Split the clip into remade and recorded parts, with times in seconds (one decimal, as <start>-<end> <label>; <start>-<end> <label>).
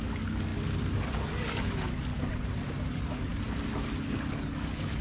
0.0-2.1 remade; 2.1-2.9 recorded; 2.9-3.3 remade; 3.3-4.0 recorded; 4.0-5.0 remade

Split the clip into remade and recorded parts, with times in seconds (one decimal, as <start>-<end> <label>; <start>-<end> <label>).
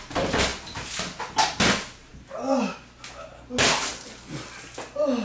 0.0-5.2 recorded